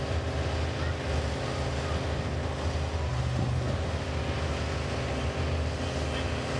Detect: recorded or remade recorded